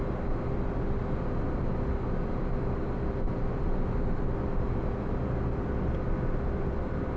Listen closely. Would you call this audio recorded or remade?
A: recorded